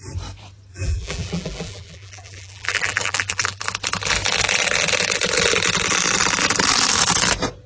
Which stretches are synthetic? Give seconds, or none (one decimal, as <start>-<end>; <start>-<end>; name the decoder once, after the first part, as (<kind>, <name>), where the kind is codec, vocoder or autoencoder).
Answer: 0.7-3.6 (vocoder, BigVGAN v2)